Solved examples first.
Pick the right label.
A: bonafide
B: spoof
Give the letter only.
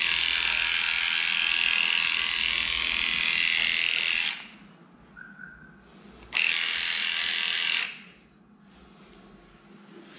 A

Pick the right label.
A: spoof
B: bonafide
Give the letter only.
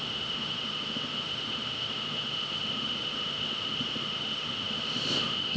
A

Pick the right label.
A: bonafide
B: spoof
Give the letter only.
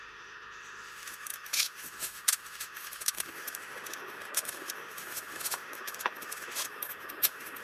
B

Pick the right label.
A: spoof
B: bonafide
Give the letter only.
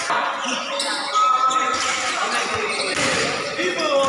B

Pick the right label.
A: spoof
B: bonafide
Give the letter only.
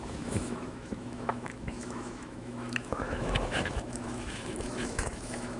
A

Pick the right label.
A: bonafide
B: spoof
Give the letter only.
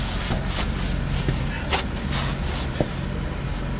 A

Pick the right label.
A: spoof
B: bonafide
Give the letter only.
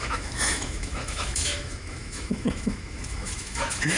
A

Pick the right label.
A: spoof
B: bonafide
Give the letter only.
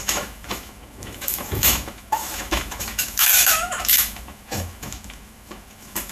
A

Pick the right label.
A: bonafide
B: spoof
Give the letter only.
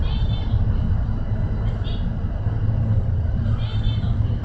A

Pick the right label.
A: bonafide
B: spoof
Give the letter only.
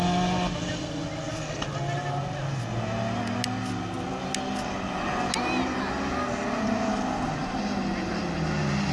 A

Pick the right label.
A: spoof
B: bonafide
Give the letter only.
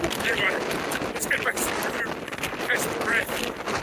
B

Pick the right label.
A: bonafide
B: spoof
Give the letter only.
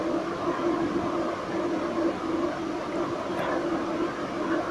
A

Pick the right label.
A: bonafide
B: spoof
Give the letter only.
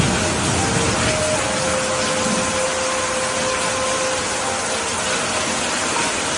A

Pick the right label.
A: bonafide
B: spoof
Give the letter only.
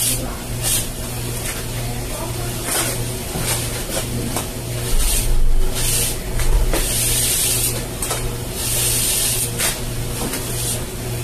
A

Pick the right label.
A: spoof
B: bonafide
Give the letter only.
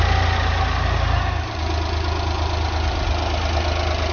B